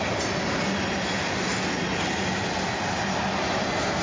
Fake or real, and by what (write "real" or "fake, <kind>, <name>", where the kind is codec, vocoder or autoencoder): real